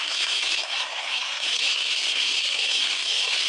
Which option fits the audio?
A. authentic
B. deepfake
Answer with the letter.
B